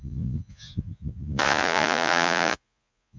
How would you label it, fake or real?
fake